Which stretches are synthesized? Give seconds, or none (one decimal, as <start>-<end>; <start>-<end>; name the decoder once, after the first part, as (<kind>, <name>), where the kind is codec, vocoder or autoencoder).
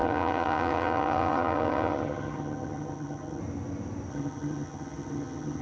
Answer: 0.0-3.4 (vocoder, HiFi-GAN); 4.1-5.6